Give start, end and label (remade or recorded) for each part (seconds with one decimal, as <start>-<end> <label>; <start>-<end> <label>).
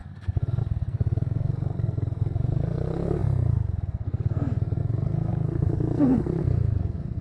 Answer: 0.0-7.2 remade